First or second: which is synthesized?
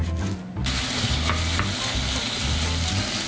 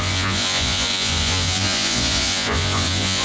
second